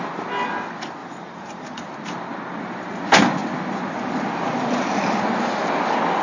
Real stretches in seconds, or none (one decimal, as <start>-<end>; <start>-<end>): 0.0-1.0; 1.8-6.2